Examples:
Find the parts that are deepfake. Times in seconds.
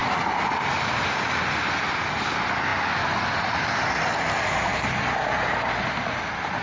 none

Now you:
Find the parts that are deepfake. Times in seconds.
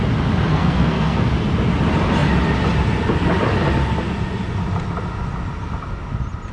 0.5-1.3 (codec, SNAC)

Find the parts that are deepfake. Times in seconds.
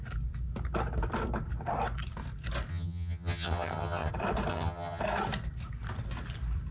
2.7-4.1 (vocoder, HiFi-GAN); 4.5-5.0